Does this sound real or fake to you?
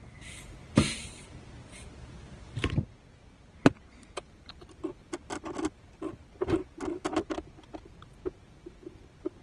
real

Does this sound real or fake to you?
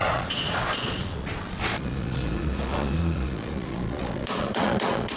fake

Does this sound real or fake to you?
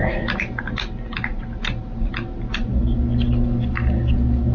real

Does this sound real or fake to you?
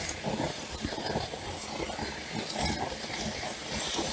real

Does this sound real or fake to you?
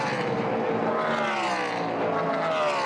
real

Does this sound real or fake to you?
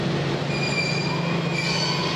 real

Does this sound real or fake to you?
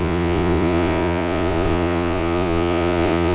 fake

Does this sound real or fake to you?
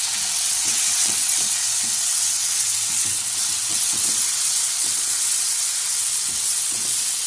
fake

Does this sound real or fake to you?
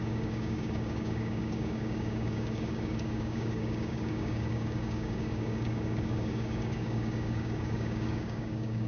fake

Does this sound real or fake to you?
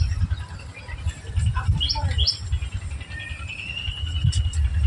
real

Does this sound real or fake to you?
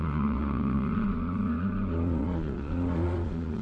fake